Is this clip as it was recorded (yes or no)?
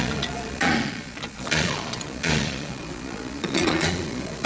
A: no